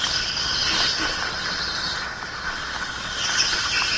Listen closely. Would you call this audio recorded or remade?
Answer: recorded